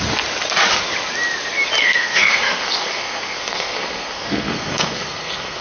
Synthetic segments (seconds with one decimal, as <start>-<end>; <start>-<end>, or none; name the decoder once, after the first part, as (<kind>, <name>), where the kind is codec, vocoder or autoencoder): 1.8-5.6 (codec, SNAC)